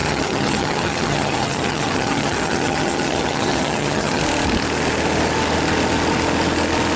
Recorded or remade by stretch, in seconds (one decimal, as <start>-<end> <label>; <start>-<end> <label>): 0.0-4.2 remade; 4.2-7.0 recorded